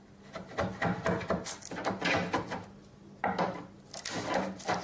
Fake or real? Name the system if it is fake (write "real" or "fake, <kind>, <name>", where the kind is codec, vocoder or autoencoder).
real